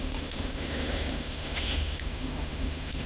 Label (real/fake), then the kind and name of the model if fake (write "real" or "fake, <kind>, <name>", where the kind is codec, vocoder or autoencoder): fake, autoencoder, DAC-VAE